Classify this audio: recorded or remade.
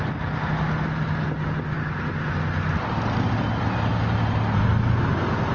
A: recorded